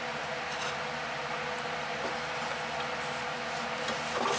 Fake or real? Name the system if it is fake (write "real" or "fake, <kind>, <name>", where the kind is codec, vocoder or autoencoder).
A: real